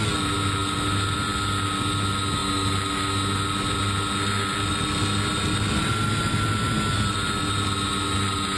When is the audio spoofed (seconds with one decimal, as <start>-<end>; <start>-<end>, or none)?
none